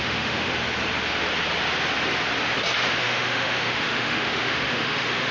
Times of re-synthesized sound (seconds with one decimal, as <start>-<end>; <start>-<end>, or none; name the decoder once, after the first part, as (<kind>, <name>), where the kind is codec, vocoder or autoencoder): 0.0-0.5 (autoencoder, DAC-VAE); 3.0-5.3